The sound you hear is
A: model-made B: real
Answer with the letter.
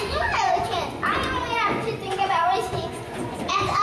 A